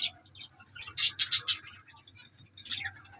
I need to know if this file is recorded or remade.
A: recorded